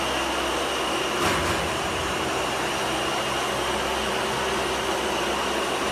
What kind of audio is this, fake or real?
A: real